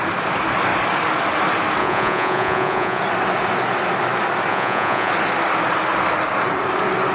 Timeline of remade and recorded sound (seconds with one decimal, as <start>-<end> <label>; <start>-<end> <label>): 0.0-1.8 recorded; 1.8-3.0 remade; 3.0-4.5 recorded; 4.5-5.1 remade; 5.1-7.1 recorded